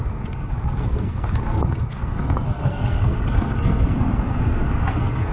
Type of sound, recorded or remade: remade